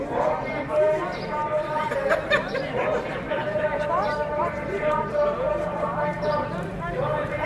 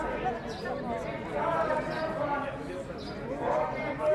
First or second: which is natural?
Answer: second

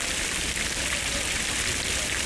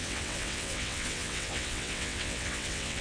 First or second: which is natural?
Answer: first